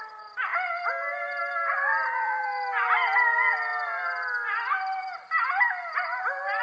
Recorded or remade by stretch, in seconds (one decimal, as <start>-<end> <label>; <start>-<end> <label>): 0.0-6.6 recorded